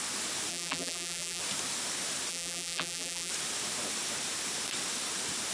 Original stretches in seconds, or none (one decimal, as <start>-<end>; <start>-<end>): 0.0-0.5; 1.4-2.3; 3.3-5.5